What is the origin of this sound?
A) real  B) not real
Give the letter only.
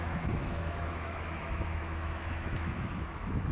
B